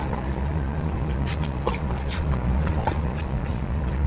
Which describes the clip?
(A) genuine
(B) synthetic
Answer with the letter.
B